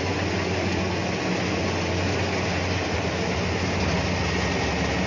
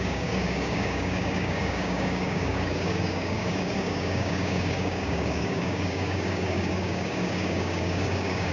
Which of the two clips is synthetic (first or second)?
second